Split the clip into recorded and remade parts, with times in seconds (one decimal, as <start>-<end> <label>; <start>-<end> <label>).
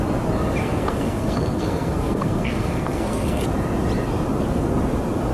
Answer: 0.0-0.6 recorded; 0.6-3.4 remade; 3.4-5.3 recorded